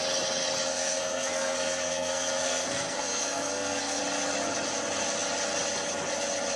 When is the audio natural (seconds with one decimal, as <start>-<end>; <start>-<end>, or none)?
0.0-0.7; 4.0-6.6